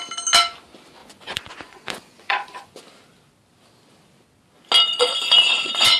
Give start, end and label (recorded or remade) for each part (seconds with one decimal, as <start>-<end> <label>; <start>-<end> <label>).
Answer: 0.0-1.0 recorded; 1.0-2.8 remade; 2.8-4.9 recorded; 4.9-6.0 remade